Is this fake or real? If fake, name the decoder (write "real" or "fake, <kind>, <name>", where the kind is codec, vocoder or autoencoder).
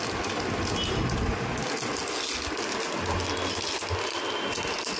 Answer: real